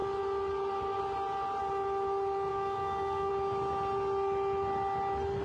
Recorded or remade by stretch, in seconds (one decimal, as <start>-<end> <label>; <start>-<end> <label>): 0.0-2.5 recorded; 2.5-3.3 remade; 3.3-5.4 recorded